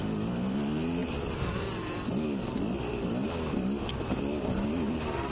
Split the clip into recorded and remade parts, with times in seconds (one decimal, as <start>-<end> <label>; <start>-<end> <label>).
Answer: 0.0-5.3 recorded